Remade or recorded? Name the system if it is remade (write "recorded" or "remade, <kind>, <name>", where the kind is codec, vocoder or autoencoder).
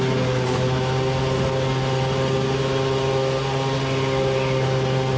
recorded